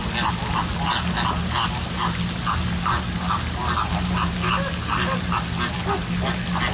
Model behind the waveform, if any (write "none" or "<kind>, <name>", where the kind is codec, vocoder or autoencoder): none